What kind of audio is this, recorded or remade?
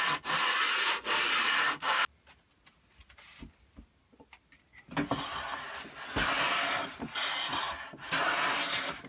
recorded